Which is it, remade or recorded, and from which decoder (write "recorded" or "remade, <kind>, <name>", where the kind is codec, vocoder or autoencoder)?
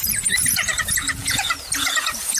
remade, vocoder, Vocos